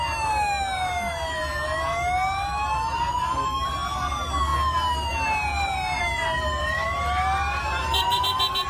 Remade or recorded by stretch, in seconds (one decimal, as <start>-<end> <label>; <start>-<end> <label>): 0.0-8.7 recorded